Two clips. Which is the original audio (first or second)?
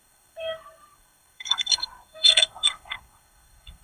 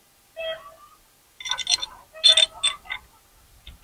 second